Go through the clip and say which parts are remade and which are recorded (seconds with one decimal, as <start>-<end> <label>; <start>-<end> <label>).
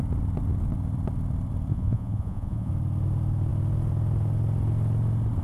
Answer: 0.0-1.7 recorded; 1.7-2.7 remade; 2.7-5.4 recorded